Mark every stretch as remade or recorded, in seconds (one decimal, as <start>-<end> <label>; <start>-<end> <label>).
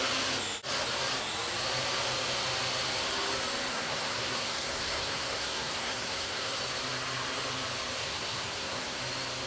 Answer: 0.0-3.7 recorded; 3.7-6.6 remade; 6.6-8.0 recorded; 8.0-9.0 remade; 9.0-9.5 recorded